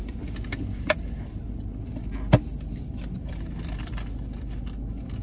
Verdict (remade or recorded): recorded